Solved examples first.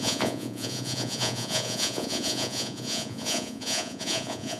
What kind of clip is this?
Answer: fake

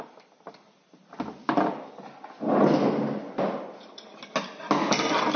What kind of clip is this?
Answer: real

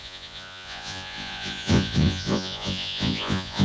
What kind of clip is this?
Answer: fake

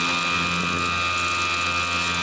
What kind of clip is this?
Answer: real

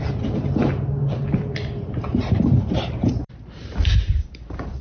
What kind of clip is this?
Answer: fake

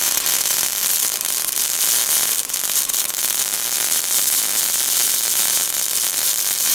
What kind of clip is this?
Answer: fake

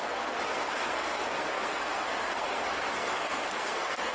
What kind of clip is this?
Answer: fake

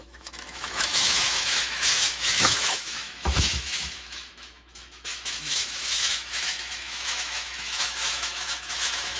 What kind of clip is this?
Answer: fake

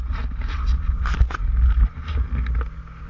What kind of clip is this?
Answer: real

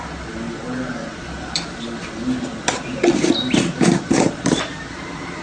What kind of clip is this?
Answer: real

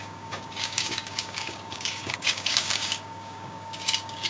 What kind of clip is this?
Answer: fake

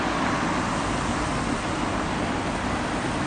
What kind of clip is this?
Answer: real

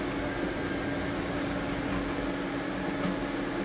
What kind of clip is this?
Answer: real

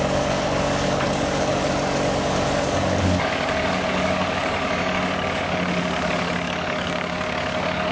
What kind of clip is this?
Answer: fake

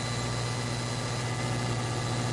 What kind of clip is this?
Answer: real